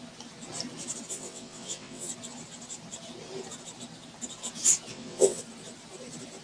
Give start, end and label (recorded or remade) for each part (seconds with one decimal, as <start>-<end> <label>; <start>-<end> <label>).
0.0-1.1 recorded; 1.1-2.1 remade; 2.1-4.9 recorded; 4.9-5.4 remade; 5.4-6.4 recorded